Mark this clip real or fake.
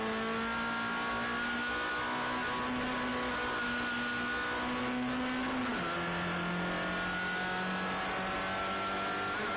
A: real